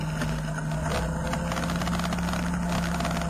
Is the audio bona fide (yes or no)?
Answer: yes